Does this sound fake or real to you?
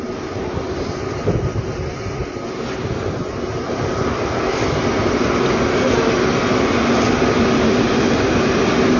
real